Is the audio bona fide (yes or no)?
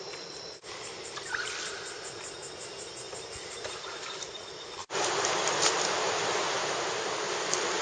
yes